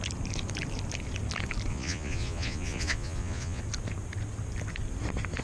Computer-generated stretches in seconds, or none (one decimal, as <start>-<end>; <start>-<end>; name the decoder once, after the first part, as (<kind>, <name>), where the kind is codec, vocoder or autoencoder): 1.7-3.6 (vocoder, Vocos)